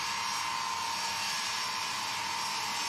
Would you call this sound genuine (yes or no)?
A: yes